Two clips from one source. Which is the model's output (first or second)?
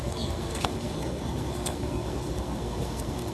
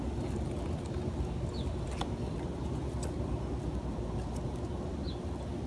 first